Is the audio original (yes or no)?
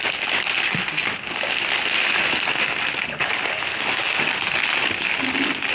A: yes